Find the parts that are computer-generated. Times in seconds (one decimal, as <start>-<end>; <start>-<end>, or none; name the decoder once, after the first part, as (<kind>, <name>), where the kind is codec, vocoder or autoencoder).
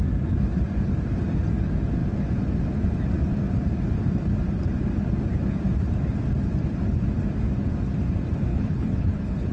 8.5-9.5 (codec, HILCodec)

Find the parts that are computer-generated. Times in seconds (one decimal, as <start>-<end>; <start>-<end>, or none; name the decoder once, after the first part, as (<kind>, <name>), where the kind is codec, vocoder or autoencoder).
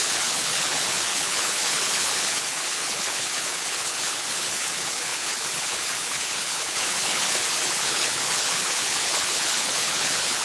0.0-10.4 (codec, HILCodec)